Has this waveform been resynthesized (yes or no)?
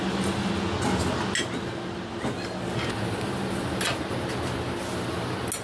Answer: no